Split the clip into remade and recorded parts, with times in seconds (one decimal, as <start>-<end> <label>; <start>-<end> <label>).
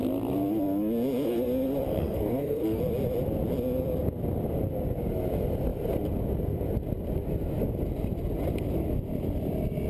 0.0-1.9 recorded; 1.9-2.8 remade; 2.8-9.9 recorded